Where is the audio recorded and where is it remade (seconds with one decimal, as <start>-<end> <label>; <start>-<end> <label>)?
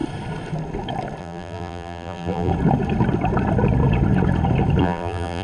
0.0-1.2 recorded; 1.2-2.5 remade; 2.5-4.8 recorded; 4.8-5.4 remade